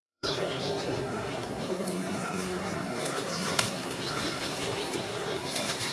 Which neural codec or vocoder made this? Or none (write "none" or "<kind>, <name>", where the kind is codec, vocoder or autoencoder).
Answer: codec, SNAC